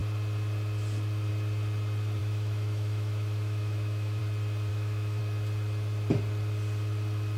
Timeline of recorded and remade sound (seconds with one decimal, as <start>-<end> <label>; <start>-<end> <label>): 0.0-2.2 recorded; 2.2-4.2 remade; 4.2-4.7 recorded; 4.7-5.2 remade; 5.2-7.4 recorded